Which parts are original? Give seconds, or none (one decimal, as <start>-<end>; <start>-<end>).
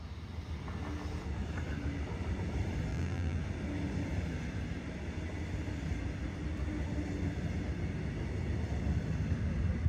0.0-2.9; 3.4-9.9